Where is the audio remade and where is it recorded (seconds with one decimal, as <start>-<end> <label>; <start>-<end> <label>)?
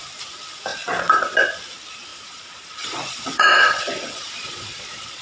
0.0-0.7 recorded; 0.7-1.5 remade; 1.5-2.1 recorded; 2.1-5.2 remade